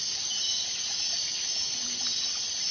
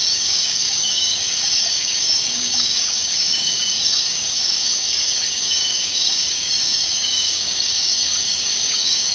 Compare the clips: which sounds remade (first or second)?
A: second